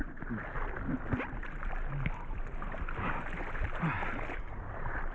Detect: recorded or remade recorded